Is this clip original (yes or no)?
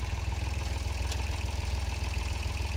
no